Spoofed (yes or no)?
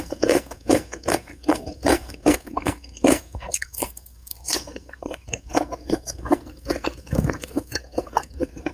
yes